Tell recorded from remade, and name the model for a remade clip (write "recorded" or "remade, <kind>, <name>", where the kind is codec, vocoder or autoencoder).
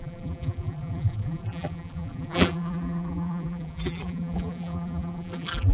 remade, vocoder, BigVGAN v2